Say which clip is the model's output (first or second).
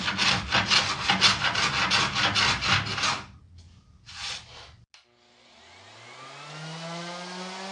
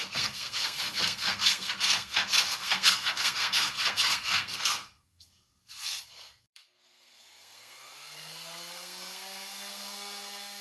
second